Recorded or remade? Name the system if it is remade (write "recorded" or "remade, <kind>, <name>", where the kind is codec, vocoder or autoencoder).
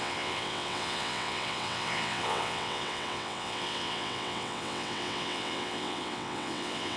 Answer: remade, vocoder, WaveNeXt